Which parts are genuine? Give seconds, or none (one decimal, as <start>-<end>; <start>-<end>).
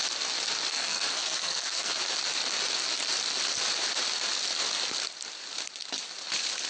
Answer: 0.0-0.7; 2.0-6.7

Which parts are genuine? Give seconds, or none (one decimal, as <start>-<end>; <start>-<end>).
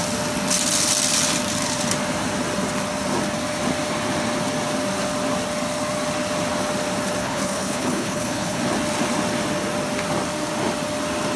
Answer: 0.0-7.2; 8.6-11.4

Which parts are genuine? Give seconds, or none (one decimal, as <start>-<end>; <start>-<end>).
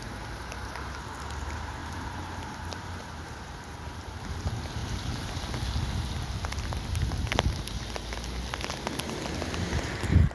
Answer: 0.0-1.8; 4.2-4.8; 5.4-10.3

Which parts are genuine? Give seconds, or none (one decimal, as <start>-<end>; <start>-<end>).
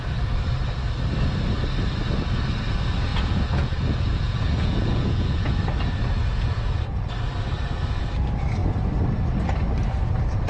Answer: 0.0-3.1; 5.5-6.2; 7.0-10.5